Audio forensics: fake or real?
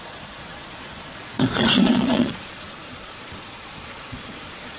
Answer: fake